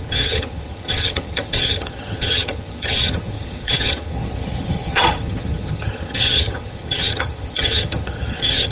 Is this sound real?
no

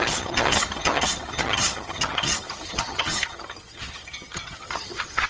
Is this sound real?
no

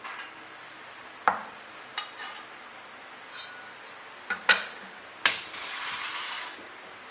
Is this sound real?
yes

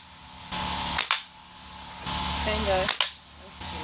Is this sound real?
yes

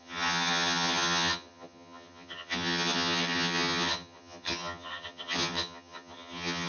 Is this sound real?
no